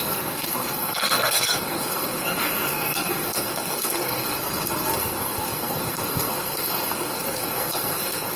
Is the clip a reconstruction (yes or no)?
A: yes